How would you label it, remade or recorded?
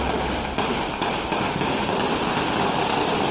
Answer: recorded